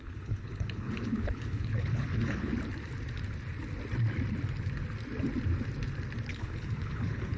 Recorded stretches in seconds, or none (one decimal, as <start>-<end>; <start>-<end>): 2.5-6.3